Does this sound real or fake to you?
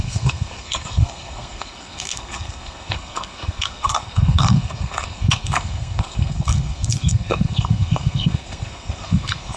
fake